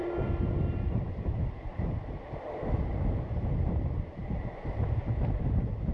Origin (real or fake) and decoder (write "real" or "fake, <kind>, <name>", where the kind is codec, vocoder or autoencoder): fake, vocoder, BigVGAN v2